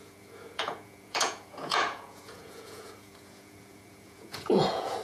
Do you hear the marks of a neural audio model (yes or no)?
yes